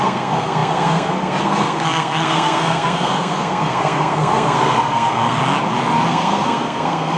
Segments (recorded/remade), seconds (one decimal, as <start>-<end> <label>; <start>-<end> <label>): 0.0-5.4 remade; 5.4-6.1 recorded; 6.1-7.2 remade